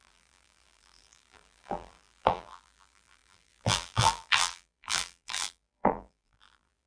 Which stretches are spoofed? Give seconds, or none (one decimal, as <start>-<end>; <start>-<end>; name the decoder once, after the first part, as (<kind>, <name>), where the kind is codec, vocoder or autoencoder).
0.0-6.9 (vocoder, BigVGAN v2)